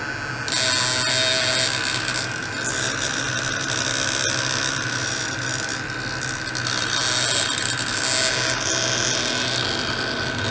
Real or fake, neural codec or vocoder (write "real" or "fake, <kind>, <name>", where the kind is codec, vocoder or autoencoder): real